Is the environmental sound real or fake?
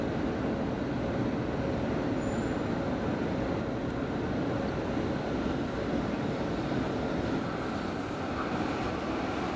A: real